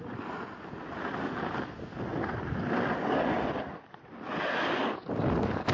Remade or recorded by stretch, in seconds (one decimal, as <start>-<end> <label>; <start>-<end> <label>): 0.0-5.7 recorded